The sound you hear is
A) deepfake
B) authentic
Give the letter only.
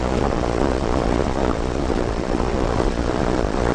A